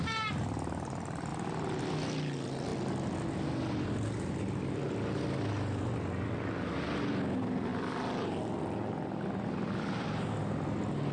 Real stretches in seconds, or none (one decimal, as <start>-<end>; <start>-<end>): 0.0-11.1